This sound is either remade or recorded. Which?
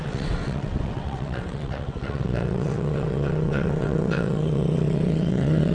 remade